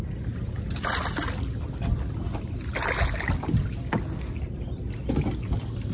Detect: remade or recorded recorded